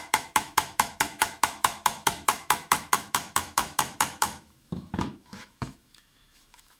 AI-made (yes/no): yes